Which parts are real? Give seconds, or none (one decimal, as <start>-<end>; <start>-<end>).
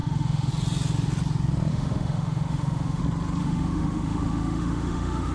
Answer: 0.5-1.7; 3.0-3.4